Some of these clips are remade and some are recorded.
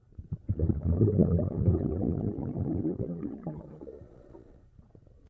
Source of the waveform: remade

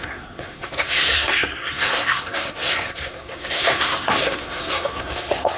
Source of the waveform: remade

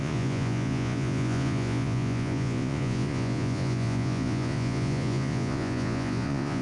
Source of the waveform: remade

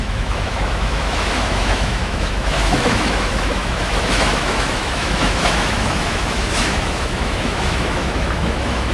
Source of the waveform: remade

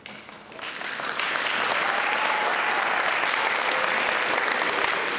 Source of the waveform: recorded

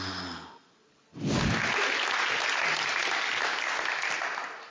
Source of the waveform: recorded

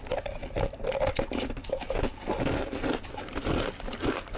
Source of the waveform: recorded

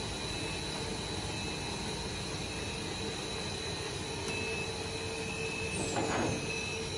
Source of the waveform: recorded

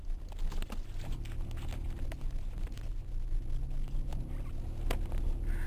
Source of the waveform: recorded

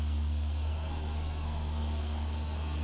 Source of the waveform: remade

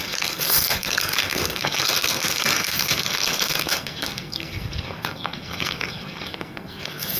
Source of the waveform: remade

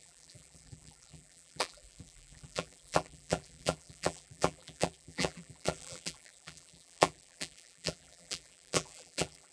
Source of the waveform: remade